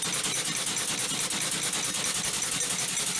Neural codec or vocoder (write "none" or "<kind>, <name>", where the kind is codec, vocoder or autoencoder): none